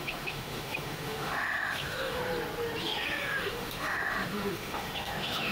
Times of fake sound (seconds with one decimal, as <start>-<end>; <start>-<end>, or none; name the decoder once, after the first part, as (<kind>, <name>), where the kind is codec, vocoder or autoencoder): 0.0-2.2 (autoencoder, DAC-VAE); 2.8-5.5

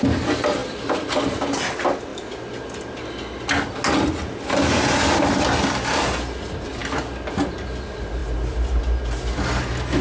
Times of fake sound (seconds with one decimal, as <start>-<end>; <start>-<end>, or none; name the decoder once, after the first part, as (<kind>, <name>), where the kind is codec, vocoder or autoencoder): none

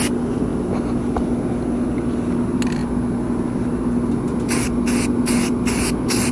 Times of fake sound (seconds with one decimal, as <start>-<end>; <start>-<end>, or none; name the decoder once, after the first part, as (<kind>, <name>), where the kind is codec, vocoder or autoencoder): none